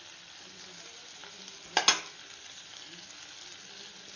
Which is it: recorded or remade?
recorded